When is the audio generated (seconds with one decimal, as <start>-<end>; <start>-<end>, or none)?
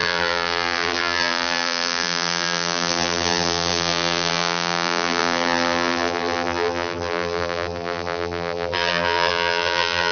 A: 0.0-10.1